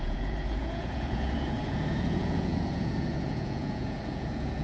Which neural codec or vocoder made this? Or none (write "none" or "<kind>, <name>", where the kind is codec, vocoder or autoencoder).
vocoder, Vocos